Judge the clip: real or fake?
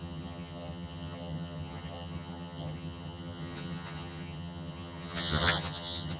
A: fake